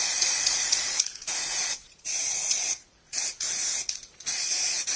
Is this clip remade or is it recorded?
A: remade